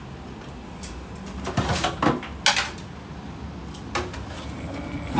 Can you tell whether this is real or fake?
real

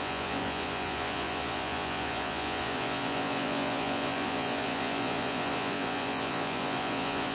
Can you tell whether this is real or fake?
fake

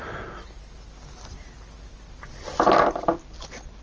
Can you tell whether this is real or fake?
real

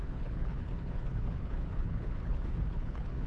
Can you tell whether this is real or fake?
fake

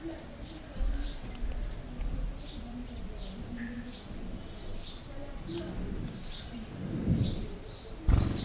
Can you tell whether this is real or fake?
real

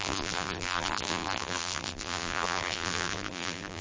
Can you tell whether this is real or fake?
fake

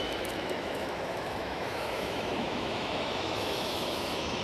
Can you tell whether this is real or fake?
fake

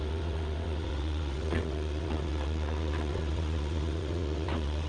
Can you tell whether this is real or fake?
fake